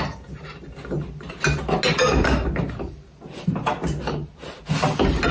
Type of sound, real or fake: real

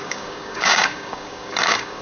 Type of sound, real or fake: fake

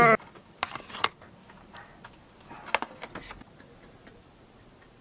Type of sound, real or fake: real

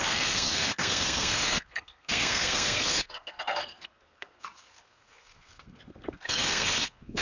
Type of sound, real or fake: fake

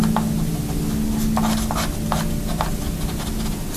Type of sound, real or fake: real